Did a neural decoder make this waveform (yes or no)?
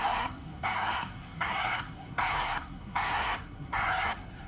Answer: yes